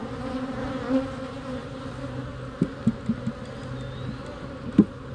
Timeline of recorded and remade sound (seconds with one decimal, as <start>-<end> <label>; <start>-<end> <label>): 0.0-5.1 recorded